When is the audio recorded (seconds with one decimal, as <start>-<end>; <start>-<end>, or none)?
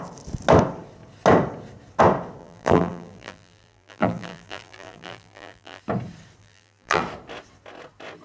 0.0-2.4; 5.8-6.4; 7.0-8.2